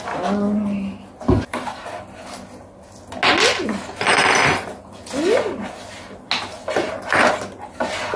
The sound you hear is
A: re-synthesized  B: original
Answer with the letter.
B